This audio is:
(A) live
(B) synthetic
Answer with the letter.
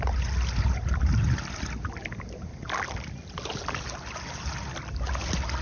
A